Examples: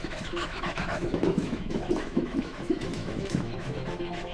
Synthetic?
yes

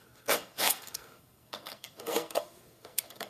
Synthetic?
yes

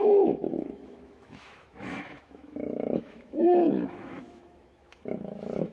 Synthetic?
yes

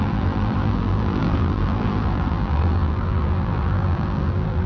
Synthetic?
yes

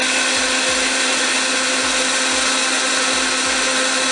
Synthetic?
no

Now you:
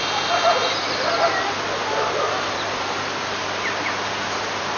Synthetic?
no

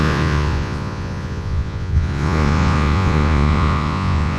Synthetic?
yes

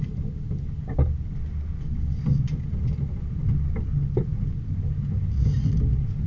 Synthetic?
no